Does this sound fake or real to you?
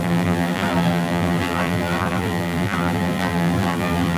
fake